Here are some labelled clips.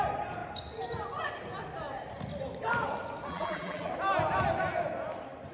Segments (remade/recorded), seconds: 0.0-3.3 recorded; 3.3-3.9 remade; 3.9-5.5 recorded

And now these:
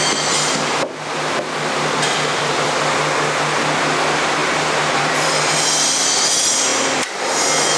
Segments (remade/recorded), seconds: 0.0-2.3 recorded; 2.3-2.8 remade; 2.8-4.4 recorded; 4.4-5.5 remade; 5.5-6.7 recorded; 6.7-7.2 remade; 7.2-7.8 recorded